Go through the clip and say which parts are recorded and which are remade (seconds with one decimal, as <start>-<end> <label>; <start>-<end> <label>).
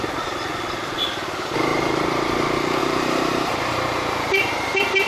0.0-1.7 recorded; 1.7-2.4 remade; 2.4-2.8 recorded; 2.8-5.1 remade